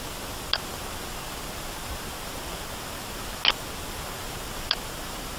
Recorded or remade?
recorded